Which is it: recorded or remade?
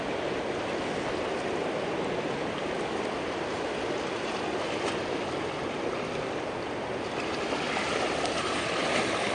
recorded